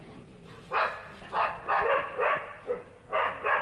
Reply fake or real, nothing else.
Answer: real